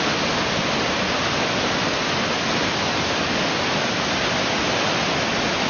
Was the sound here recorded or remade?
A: recorded